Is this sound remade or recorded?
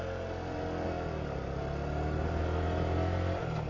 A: recorded